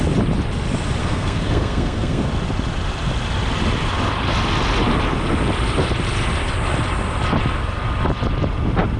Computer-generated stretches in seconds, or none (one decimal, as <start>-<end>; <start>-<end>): 1.0-2.3